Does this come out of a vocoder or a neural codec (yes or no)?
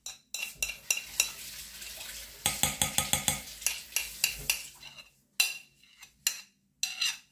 no